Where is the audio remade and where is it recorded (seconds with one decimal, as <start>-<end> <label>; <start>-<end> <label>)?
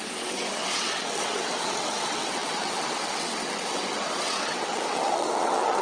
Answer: 0.0-5.8 remade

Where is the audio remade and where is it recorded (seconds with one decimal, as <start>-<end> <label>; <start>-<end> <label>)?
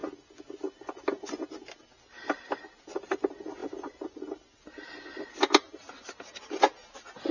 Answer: 0.0-3.6 recorded; 3.6-6.1 remade; 6.1-7.3 recorded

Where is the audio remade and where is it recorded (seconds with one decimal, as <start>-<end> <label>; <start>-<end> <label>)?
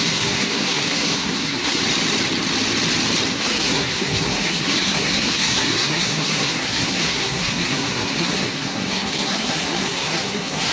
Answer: 0.0-1.8 remade; 1.8-3.3 recorded; 3.3-10.7 remade